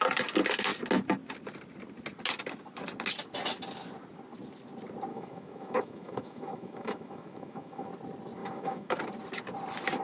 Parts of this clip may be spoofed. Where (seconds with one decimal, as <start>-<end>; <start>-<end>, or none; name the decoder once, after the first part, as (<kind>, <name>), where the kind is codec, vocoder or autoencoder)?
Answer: 5.1-7.9 (autoencoder, DAC-VAE); 8.4-9.0